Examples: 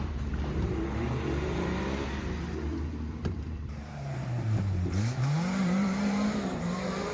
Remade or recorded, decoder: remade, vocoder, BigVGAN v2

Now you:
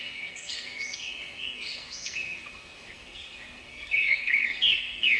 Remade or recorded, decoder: remade, codec, SNAC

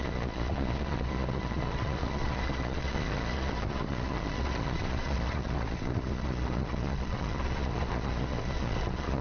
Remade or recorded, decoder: remade, vocoder, Vocos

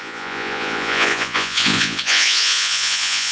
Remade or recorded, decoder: remade, vocoder, Vocos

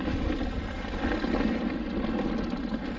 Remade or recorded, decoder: recorded